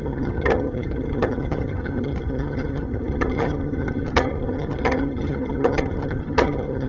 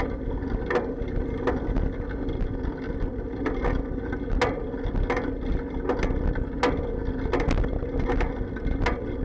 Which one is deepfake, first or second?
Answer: first